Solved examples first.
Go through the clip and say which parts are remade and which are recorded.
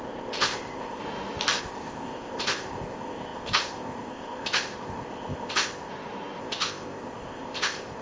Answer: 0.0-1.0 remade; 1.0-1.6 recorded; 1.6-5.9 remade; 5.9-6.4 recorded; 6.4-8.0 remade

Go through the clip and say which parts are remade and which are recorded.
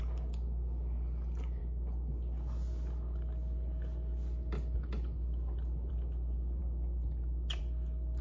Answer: 0.0-8.2 recorded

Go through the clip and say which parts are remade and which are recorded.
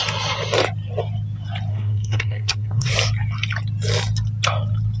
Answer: 0.0-1.7 recorded; 1.7-2.9 remade; 2.9-5.0 recorded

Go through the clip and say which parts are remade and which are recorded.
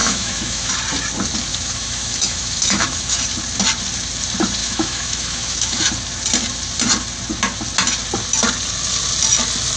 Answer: 0.0-0.7 remade; 0.7-1.5 recorded; 1.5-3.2 remade; 3.2-4.6 recorded; 4.6-5.9 remade; 5.9-9.8 recorded